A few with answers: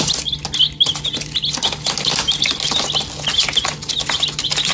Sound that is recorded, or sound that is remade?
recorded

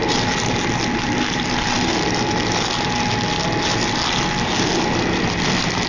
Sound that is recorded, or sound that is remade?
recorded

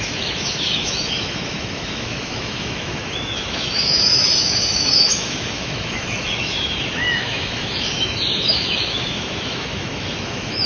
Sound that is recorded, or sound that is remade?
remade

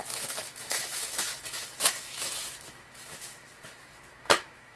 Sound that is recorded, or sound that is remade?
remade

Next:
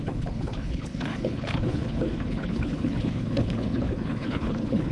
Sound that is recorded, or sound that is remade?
remade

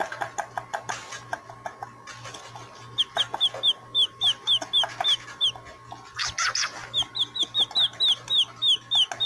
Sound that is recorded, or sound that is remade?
recorded